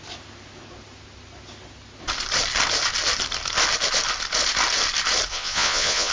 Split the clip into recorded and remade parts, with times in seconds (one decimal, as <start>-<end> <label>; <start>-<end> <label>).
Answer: 0.0-5.3 recorded; 5.3-6.1 remade